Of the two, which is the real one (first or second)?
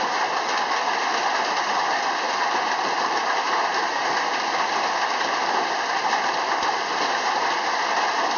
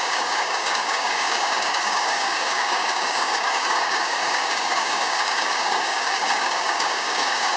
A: first